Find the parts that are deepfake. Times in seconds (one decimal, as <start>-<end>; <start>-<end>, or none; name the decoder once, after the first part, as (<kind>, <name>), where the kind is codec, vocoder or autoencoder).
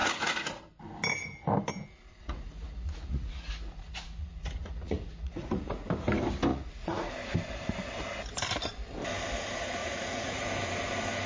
0.0-0.6 (vocoder, Vocos); 2.2-5.9; 6.5-7.1; 9.8-10.3